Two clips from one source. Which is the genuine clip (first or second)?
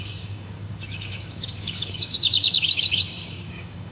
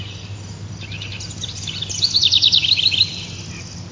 second